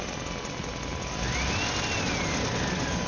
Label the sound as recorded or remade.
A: recorded